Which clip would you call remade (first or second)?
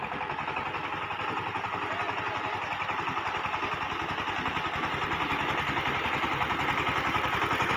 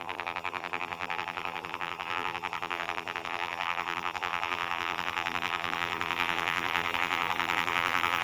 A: second